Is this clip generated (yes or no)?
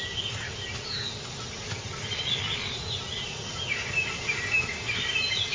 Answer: no